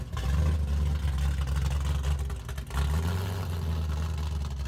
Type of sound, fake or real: real